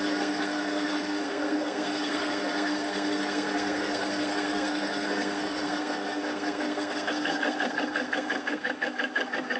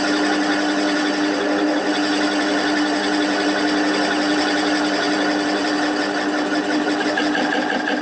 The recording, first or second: second